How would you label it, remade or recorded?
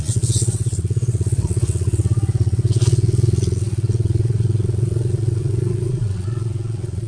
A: remade